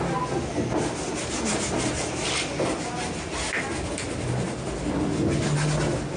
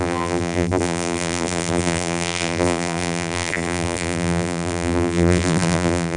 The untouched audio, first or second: first